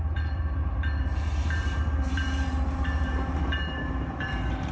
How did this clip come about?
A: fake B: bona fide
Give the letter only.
A